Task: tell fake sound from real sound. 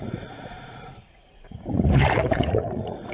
fake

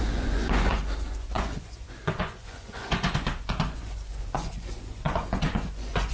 fake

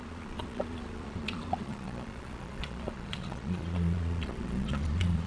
fake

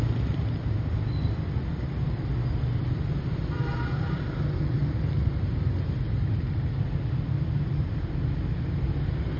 real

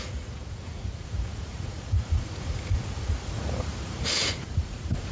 fake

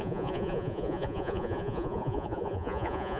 fake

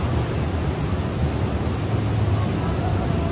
real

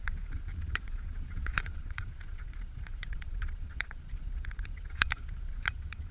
fake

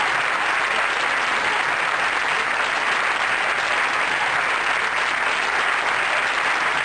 real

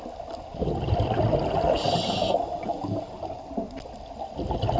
real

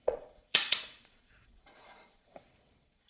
fake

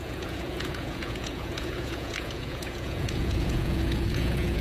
fake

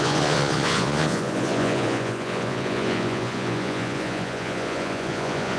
fake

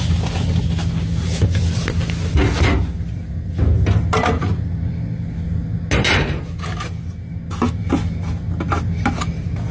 real